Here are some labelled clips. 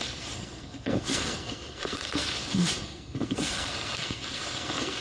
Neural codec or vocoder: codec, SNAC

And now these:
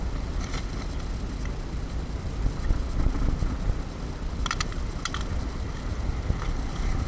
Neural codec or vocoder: none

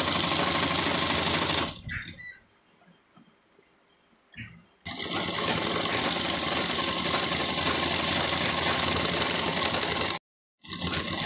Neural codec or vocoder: none